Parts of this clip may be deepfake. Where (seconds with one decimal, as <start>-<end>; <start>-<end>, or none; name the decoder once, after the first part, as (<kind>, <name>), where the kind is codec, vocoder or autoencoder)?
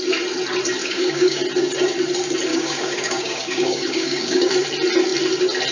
0.8-1.4 (codec, DAC); 2.5-4.5